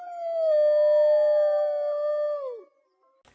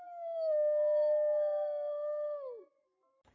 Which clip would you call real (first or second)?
first